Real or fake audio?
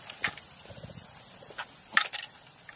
real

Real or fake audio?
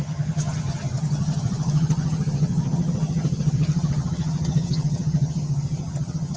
fake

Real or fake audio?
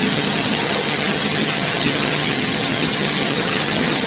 fake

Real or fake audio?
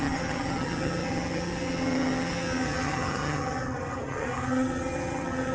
fake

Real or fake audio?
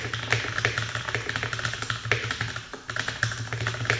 real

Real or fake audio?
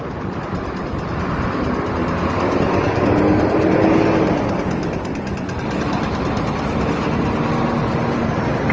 real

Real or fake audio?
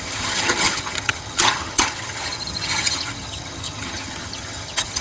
fake